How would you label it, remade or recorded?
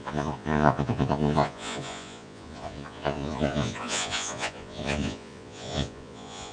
remade